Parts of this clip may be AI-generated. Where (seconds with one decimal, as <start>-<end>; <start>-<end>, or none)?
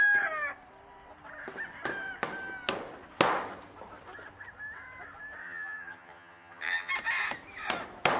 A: 5.4-6.9